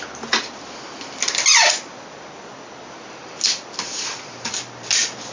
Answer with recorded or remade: recorded